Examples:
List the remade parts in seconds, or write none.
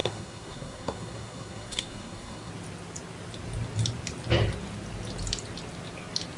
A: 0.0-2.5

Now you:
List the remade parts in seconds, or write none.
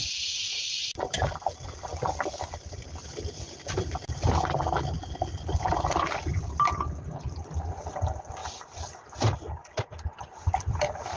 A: none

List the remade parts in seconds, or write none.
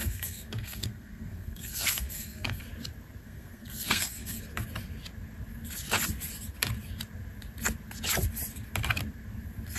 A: 0.0-2.6; 3.2-4.4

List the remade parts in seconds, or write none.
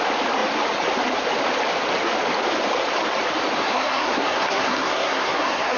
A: 3.6-5.8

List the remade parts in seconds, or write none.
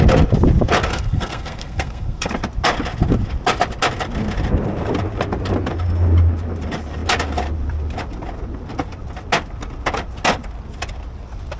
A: 0.9-2.3